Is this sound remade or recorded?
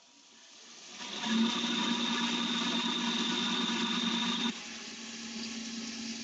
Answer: recorded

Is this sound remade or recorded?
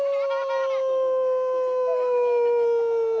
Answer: recorded